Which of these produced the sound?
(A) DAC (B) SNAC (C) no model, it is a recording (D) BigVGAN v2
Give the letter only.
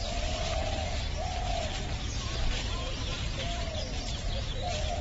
C